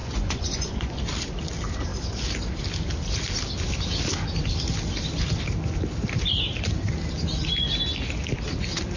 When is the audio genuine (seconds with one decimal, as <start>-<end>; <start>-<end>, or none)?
1.0-9.0